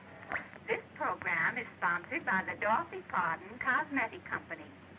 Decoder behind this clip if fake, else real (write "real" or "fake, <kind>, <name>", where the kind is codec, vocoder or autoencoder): fake, vocoder, Vocos